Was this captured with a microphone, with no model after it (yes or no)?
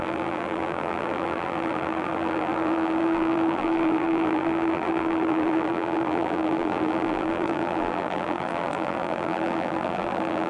no